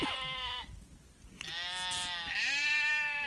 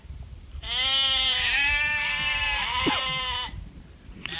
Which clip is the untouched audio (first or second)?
first